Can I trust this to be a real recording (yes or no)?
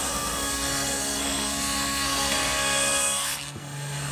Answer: no